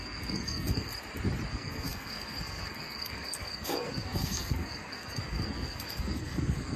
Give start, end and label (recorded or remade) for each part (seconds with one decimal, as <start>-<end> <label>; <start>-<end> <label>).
0.0-0.9 remade; 0.9-1.5 recorded; 1.5-6.8 remade